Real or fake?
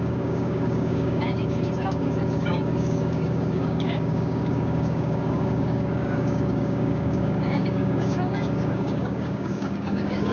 fake